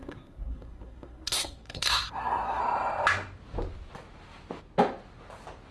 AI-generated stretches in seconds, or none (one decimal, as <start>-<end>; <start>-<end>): 0.0-2.6